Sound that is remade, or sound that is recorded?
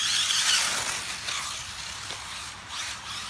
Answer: recorded